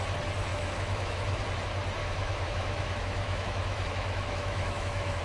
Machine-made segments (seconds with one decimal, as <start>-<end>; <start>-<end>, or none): 0.5-1.4; 2.0-5.2

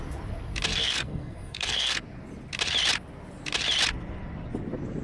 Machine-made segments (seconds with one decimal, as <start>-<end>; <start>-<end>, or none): 0.7-2.0

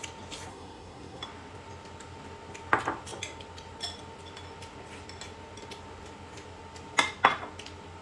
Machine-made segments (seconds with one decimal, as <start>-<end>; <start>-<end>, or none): 0.5-1.2

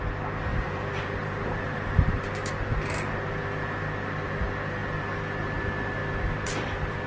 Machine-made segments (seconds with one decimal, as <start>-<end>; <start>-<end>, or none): 0.5-2.5; 6.0-7.1

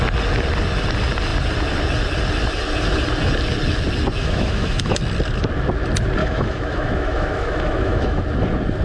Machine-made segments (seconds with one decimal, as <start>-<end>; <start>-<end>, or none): 4.2-5.0; 6.2-8.2

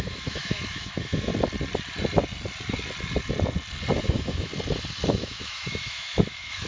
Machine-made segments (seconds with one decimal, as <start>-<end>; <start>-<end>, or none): 0.0-1.3; 4.0-4.5; 5.1-6.7